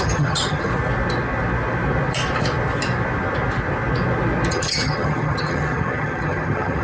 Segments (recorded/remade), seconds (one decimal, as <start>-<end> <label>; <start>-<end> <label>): 0.0-0.7 remade; 0.7-4.5 recorded; 4.5-6.8 remade